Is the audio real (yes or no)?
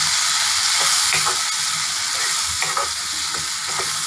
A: yes